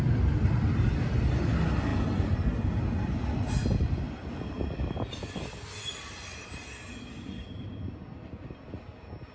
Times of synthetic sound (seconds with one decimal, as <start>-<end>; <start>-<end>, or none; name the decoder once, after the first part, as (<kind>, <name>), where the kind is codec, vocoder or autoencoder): none